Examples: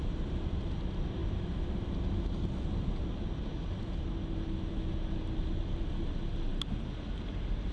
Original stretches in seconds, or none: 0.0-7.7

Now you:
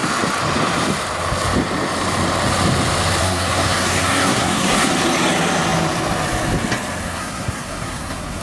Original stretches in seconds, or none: 0.0-3.2; 4.9-7.0

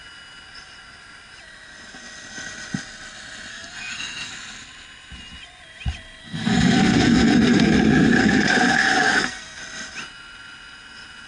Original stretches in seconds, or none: 0.0-3.5; 4.3-6.2; 7.7-8.2; 9.6-11.3

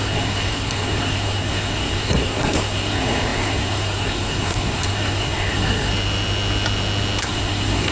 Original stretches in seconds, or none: 5.9-7.2

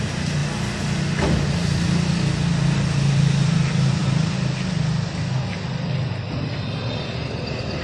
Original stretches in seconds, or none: 0.0-7.8